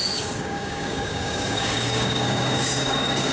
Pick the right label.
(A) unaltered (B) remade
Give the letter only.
B